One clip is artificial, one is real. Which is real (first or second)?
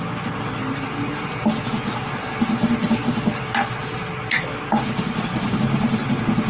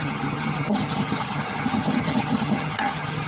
first